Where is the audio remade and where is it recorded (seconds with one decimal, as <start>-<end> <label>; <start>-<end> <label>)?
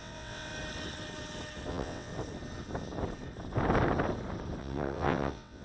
0.0-0.5 remade; 0.5-1.7 recorded; 1.7-2.1 remade; 2.1-4.6 recorded; 4.6-5.6 remade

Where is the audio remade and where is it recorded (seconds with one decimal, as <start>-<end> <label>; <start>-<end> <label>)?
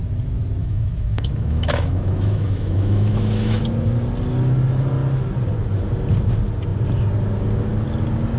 0.0-0.6 recorded; 0.6-3.6 remade; 3.6-8.4 recorded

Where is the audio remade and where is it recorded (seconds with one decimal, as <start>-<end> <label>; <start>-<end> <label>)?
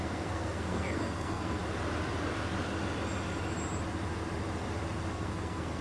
0.0-1.6 remade; 1.6-5.1 recorded; 5.1-5.8 remade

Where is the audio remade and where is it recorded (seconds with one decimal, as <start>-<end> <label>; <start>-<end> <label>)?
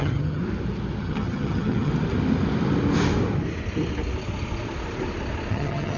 0.0-0.4 remade; 0.4-1.0 recorded; 1.0-1.9 remade; 1.9-5.5 recorded; 5.5-6.0 remade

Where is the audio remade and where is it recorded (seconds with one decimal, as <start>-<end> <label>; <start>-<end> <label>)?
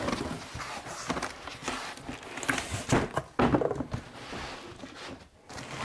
0.0-5.8 recorded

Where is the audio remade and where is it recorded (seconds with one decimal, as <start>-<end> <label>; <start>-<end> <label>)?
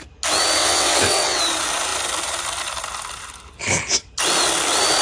0.0-0.6 recorded; 0.6-1.4 remade; 1.4-5.0 recorded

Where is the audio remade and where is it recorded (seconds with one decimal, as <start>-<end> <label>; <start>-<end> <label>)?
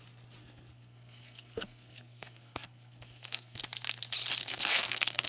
0.0-0.4 recorded; 0.4-3.6 remade; 3.6-4.4 recorded; 4.4-5.3 remade